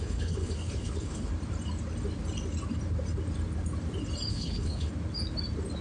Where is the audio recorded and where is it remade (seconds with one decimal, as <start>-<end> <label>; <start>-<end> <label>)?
0.0-1.3 remade; 1.3-4.3 recorded; 4.3-4.9 remade; 4.9-5.8 recorded